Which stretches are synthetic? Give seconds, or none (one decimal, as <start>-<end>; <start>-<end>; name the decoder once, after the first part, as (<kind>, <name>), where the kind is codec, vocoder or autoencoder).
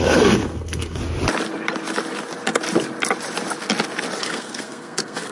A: 0.0-1.0 (codec, SNAC); 4.2-5.3